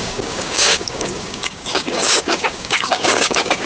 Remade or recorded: remade